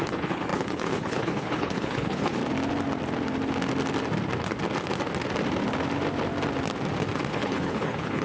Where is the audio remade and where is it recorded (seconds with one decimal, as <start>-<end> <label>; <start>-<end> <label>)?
0.0-2.4 remade; 2.4-7.3 recorded; 7.3-8.2 remade

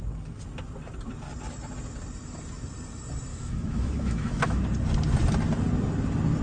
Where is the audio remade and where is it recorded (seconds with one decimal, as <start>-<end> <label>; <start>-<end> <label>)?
0.0-3.3 recorded; 3.3-4.6 remade; 4.6-6.4 recorded

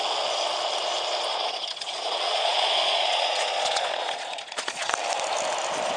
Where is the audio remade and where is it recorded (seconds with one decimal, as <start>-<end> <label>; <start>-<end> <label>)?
0.0-1.3 recorded; 1.3-4.9 remade; 4.9-6.0 recorded

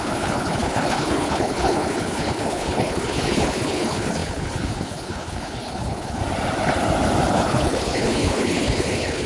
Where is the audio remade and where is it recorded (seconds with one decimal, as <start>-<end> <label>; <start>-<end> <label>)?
0.0-6.2 remade; 6.2-7.3 recorded; 7.3-9.3 remade

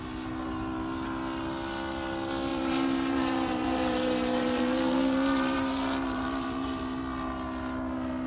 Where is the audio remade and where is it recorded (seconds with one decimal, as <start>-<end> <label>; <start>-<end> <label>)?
0.0-2.5 recorded; 2.5-7.0 remade; 7.0-8.3 recorded